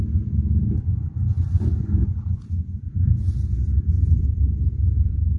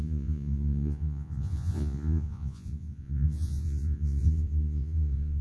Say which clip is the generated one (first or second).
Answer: second